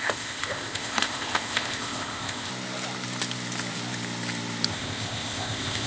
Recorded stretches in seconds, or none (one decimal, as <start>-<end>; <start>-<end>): 2.5-4.7